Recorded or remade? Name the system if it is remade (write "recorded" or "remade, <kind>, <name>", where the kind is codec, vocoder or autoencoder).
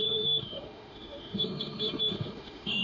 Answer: remade, autoencoder, DAC-VAE